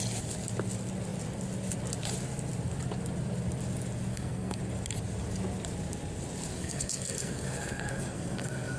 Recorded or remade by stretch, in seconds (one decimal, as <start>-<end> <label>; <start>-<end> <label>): 0.0-4.1 recorded; 4.1-4.6 remade; 4.6-6.5 recorded; 6.5-8.8 remade